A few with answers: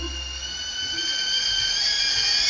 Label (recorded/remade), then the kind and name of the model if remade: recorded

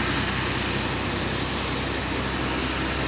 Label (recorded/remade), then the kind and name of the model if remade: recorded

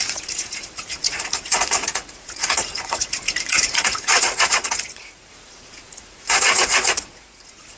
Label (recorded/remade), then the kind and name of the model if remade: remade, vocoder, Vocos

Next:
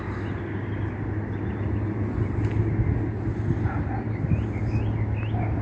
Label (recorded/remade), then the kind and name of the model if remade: recorded